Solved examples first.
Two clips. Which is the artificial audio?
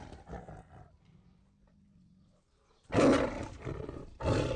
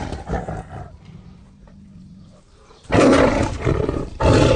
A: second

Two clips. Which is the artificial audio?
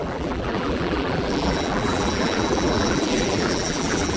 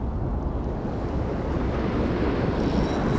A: first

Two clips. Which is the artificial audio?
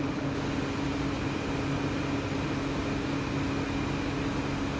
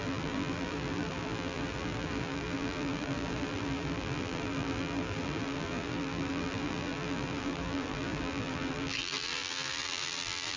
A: second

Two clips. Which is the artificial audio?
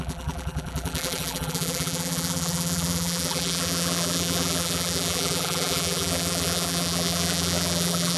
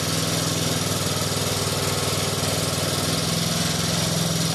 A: first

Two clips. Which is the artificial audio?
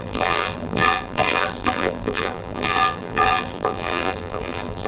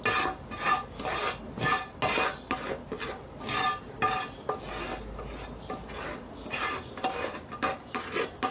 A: first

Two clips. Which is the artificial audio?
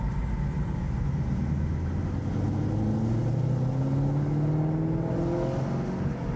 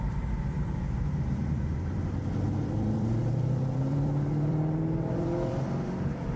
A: second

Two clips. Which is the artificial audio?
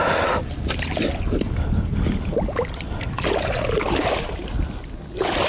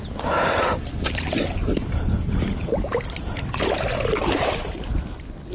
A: second